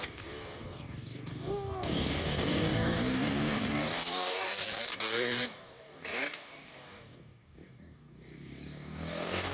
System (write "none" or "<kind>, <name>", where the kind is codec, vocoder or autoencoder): codec, DAC